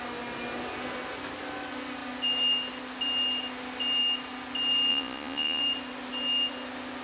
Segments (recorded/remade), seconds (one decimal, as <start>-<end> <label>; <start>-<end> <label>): 0.0-4.9 recorded; 4.9-5.6 remade; 5.6-7.0 recorded